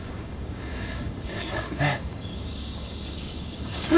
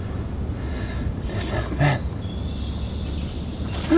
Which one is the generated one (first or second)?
first